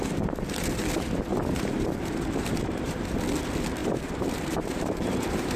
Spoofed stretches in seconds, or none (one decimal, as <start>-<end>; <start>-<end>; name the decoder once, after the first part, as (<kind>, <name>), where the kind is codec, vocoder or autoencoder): 1.3-3.2 (vocoder, BigVGAN v2); 3.8-5.6